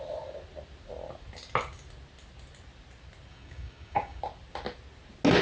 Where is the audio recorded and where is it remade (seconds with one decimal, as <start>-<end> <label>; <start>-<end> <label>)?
0.0-3.3 recorded; 3.3-4.2 remade; 4.2-5.4 recorded